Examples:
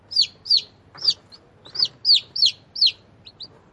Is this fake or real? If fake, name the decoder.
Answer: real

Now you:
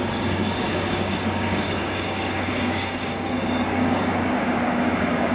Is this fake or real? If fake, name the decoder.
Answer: fake, codec, DAC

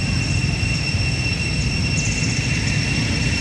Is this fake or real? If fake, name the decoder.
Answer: real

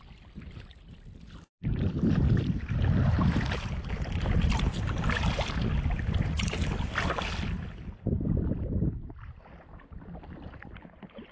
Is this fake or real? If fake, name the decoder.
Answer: real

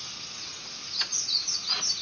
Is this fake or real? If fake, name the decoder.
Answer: real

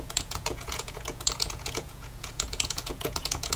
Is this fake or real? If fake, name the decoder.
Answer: fake, vocoder, Vocos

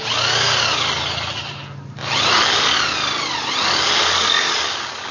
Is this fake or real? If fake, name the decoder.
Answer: real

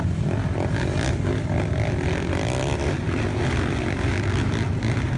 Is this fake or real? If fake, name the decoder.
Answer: real